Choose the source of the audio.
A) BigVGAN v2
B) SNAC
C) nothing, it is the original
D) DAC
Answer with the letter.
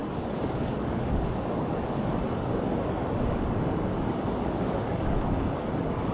D